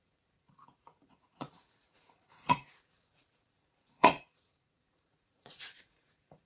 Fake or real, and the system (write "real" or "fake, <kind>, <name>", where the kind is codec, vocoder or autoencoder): fake, vocoder, Vocos